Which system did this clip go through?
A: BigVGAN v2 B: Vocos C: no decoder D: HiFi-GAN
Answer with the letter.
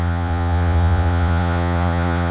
B